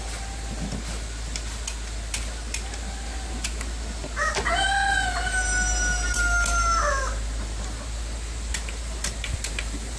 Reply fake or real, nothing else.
real